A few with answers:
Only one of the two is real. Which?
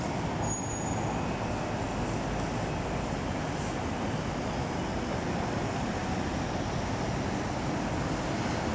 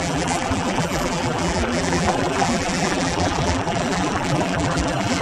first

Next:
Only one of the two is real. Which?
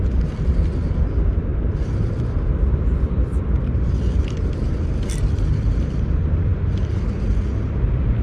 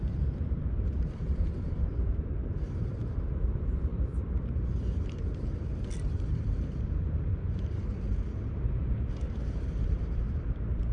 first